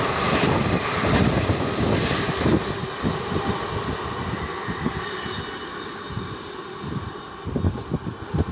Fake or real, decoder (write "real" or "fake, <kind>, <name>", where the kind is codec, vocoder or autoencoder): real